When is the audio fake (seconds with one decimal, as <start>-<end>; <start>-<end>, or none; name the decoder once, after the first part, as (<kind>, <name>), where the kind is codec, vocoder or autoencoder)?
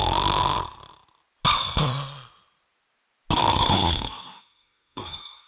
3.5-5.5 (codec, SNAC)